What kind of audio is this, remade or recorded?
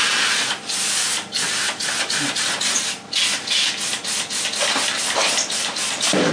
recorded